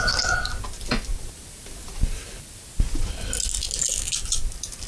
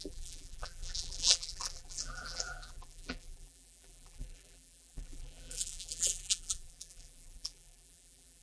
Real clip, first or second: first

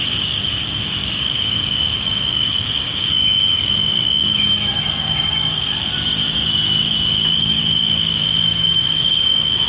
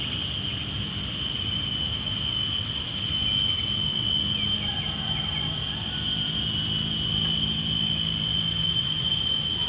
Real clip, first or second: second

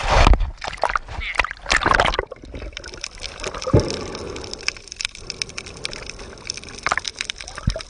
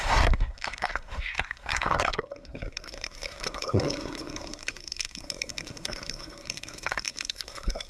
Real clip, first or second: first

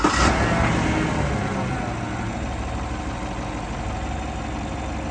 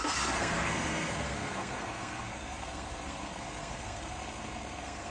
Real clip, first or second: first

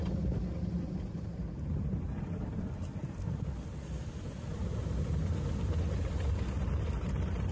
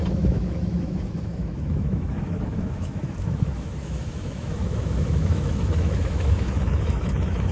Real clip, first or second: first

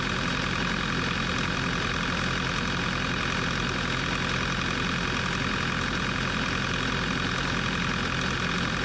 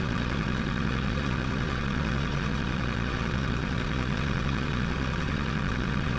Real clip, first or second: first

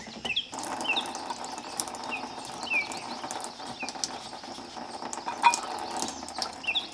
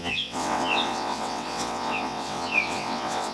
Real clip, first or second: first